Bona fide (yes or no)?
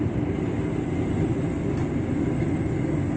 yes